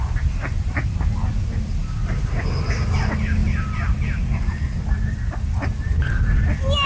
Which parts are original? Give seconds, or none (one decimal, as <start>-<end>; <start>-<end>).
0.0-6.9